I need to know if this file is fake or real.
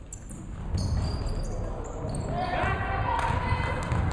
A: real